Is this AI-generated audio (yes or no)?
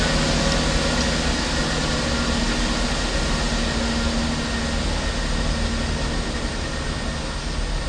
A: no